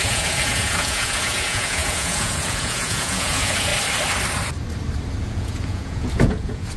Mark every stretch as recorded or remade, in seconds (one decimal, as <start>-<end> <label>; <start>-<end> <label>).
0.0-3.7 remade; 3.7-5.2 recorded; 5.2-6.8 remade